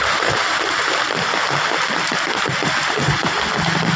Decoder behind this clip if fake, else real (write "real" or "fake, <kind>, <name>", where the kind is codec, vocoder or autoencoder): real